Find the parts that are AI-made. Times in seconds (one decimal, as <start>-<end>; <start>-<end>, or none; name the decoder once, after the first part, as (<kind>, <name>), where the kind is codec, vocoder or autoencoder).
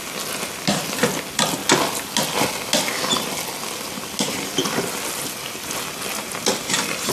none